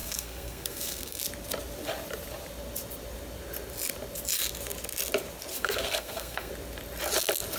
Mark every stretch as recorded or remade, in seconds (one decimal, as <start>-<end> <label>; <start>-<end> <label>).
0.0-1.2 remade; 1.2-5.5 recorded; 5.5-6.5 remade; 6.5-7.6 recorded